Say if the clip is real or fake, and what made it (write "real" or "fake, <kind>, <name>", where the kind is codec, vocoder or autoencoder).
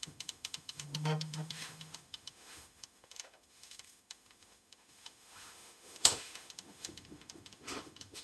fake, autoencoder, DAC-VAE